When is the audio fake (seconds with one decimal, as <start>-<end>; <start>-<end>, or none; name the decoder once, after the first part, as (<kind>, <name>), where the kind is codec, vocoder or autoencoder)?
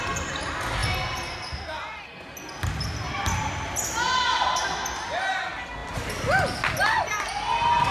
none